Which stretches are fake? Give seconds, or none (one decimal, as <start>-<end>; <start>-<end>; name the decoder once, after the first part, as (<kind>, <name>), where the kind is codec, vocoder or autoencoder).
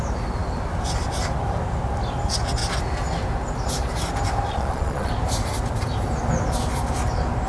4.5-5.1 (vocoder, Vocos)